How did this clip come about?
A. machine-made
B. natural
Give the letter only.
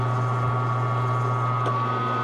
B